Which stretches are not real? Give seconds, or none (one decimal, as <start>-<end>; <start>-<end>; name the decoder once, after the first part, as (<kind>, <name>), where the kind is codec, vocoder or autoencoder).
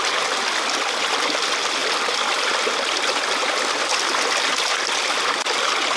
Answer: none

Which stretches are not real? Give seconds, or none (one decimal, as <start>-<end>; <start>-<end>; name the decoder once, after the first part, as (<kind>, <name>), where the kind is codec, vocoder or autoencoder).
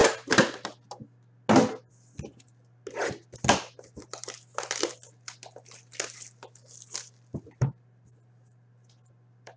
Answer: none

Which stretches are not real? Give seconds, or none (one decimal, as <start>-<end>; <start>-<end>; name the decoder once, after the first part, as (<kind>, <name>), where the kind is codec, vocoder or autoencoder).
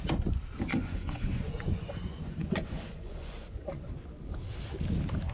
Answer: 0.7-3.9 (vocoder, Vocos)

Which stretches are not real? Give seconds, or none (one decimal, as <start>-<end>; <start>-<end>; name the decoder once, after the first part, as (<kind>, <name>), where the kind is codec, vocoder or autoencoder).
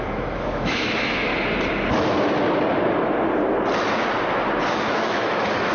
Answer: 0.0-1.3 (autoencoder, DAC-VAE); 4.7-5.7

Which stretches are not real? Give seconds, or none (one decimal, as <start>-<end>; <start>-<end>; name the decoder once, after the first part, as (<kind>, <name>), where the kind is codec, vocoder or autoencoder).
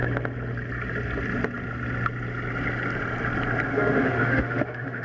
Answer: 3.7-5.0 (autoencoder, DAC-VAE)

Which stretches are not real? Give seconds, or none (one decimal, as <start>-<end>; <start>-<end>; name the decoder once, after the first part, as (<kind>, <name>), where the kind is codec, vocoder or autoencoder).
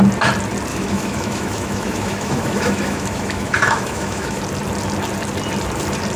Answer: 0.7-4.4 (autoencoder, DAC-VAE)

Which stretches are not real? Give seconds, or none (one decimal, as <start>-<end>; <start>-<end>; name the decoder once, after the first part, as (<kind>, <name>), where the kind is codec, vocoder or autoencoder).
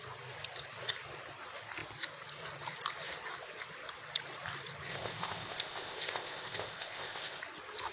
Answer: 4.9-7.4 (codec, ZipCodec)